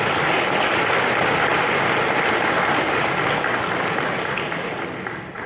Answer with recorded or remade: recorded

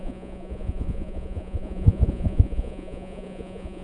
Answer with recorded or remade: remade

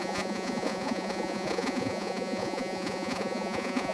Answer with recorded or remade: remade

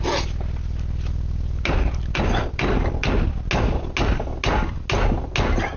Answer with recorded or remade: recorded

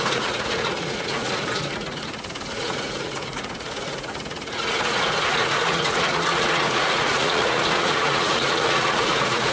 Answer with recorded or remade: remade